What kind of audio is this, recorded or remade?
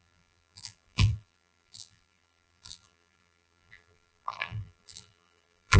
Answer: remade